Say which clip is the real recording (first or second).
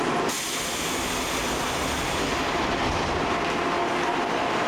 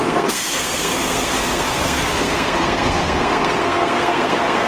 first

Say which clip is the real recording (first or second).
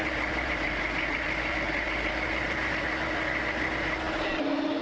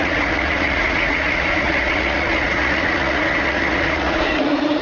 first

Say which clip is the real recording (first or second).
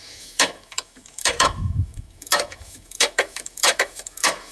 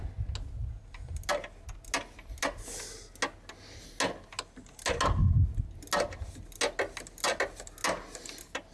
second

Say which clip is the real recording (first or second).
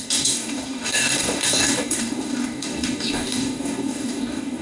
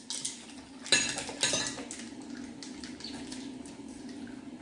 second